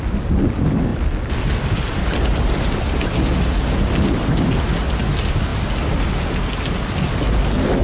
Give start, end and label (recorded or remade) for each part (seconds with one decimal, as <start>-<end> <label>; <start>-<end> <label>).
0.0-7.8 recorded